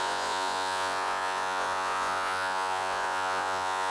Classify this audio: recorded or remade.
remade